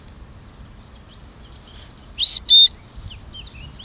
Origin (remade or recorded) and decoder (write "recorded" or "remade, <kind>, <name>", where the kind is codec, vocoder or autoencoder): recorded